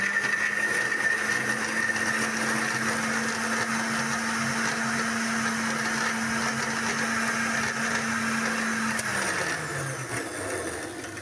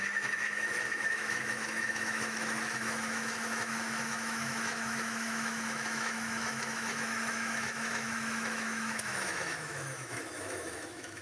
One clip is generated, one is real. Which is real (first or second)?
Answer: first